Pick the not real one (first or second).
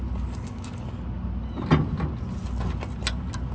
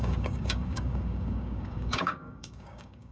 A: second